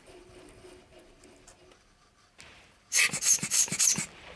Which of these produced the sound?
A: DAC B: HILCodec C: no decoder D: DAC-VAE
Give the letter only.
C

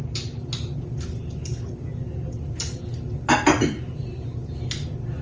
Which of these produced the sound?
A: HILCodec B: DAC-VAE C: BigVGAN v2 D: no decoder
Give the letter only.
D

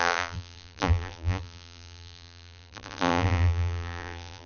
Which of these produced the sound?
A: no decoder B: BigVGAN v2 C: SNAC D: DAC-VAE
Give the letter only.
B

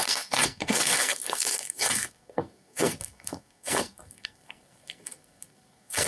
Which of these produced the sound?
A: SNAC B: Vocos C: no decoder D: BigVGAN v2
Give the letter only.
A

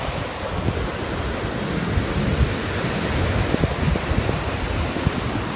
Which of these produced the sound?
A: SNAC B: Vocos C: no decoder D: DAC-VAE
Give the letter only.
C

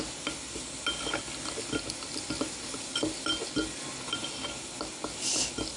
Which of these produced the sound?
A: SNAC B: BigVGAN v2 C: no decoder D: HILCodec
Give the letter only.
C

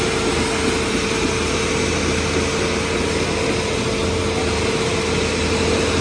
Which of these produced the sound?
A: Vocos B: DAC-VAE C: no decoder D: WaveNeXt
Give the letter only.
C